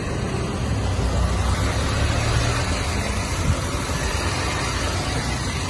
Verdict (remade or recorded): recorded